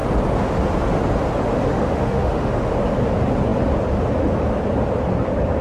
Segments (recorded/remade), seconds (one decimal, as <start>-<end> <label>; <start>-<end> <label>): 0.0-1.7 recorded; 1.7-2.7 remade; 2.7-5.6 recorded